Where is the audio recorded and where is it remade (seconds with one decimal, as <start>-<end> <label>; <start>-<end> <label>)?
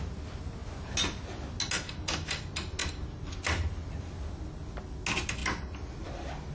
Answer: 0.0-2.8 recorded; 2.8-4.1 remade; 4.1-6.5 recorded